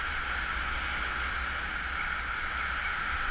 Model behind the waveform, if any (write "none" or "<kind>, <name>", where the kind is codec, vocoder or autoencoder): none